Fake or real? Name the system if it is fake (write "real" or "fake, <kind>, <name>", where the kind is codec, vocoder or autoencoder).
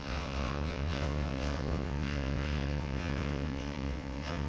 fake, vocoder, WaveNeXt